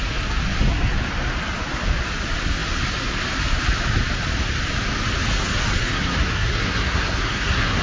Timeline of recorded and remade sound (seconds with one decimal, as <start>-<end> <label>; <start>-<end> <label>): 0.0-5.8 recorded; 5.8-7.8 remade